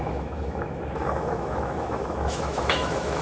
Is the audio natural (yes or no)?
no